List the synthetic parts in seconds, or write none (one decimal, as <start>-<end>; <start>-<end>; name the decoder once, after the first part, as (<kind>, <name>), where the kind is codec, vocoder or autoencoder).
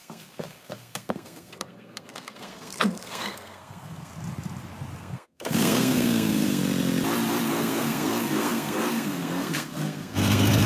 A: 0.0-4.1 (codec, SNAC); 5.0-6.6; 7.4-10.7